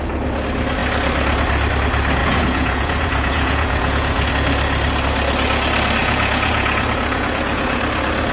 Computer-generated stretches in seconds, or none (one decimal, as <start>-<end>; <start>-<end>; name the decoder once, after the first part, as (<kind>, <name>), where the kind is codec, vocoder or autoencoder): 2.2-4.3 (vocoder, Vocos); 6.0-7.8